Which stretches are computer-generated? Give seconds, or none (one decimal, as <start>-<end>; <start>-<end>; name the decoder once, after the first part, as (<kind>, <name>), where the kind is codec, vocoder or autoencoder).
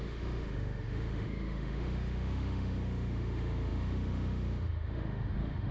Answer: 0.0-5.7 (autoencoder, DAC-VAE)